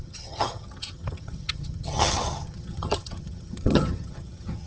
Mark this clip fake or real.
fake